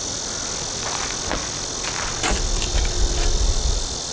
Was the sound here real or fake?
real